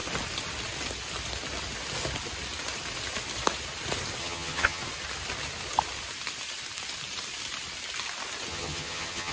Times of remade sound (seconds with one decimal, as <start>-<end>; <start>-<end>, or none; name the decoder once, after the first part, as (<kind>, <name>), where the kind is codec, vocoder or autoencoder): 4.2-4.8 (vocoder, HiFi-GAN); 8.5-9.3